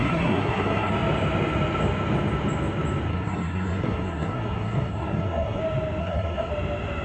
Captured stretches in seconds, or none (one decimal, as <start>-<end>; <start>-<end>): 0.9-3.1; 5.6-6.0; 6.5-7.0